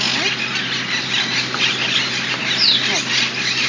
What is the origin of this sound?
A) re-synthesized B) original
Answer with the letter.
B